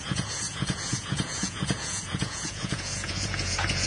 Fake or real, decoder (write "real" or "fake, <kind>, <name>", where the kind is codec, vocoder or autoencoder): fake, vocoder, Vocos